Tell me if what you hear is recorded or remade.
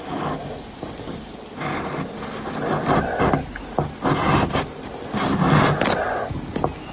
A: recorded